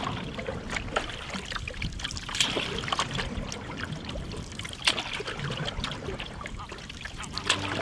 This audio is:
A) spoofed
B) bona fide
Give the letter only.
B